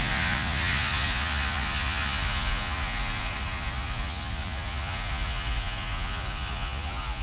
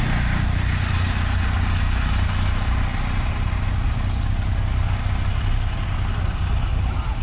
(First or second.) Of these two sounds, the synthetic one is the first